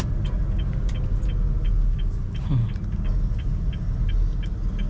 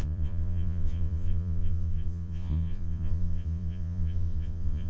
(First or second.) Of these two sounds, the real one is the first